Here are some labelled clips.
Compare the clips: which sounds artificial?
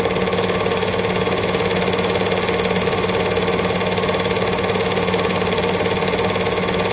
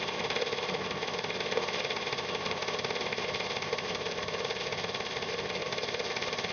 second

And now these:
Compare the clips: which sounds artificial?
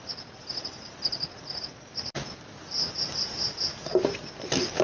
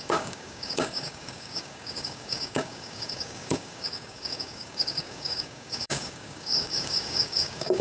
second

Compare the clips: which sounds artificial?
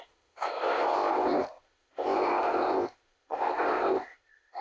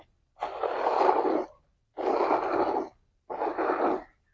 first